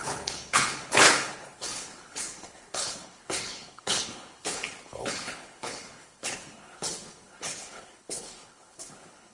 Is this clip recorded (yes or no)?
no